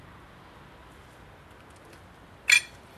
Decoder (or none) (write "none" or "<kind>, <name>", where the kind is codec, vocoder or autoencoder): none